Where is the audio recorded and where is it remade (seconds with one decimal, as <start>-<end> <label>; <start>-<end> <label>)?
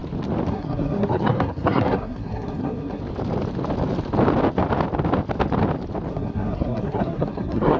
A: 0.0-0.5 recorded; 0.5-3.0 remade; 3.0-6.1 recorded; 6.1-7.8 remade